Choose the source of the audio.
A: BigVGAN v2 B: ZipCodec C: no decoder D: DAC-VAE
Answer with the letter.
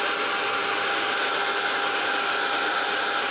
C